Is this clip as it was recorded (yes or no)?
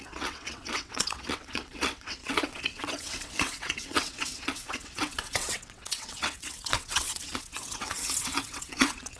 no